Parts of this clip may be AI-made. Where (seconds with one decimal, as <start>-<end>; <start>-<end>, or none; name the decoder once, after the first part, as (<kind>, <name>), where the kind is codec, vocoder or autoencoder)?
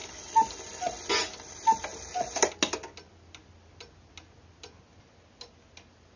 none